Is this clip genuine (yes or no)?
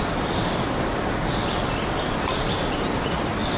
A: yes